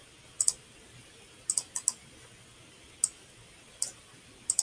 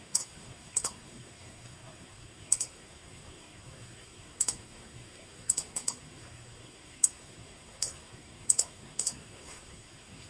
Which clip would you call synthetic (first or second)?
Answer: second